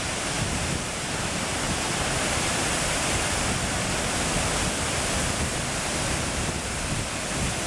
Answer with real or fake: fake